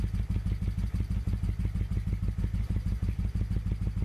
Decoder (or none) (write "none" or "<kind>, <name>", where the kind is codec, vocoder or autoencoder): none